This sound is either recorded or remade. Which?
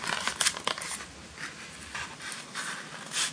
recorded